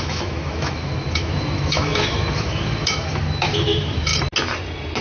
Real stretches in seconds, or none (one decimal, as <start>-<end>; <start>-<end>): 4.1-5.0